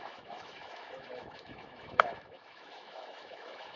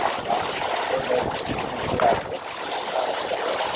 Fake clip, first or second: first